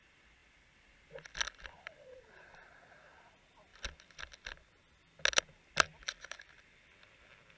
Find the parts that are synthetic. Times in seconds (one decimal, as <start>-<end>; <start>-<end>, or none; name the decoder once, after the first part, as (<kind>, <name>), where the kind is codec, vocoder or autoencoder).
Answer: none